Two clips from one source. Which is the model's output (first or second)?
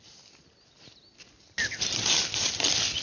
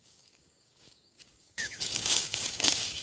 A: second